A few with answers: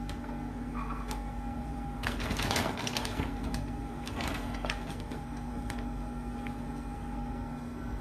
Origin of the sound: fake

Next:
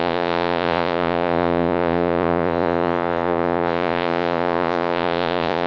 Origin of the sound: fake